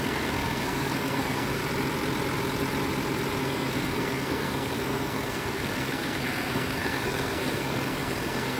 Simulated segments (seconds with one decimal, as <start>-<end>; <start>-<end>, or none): 0.0-1.6; 3.4-8.6